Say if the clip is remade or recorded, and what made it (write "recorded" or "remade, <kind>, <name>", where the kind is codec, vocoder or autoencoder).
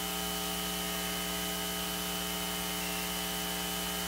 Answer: recorded